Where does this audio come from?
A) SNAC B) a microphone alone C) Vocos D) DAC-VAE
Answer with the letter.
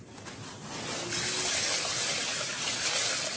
B